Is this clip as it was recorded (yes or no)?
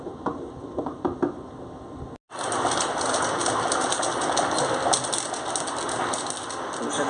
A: yes